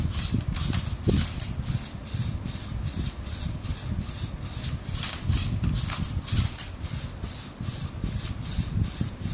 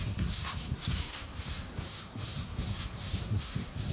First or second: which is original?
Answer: first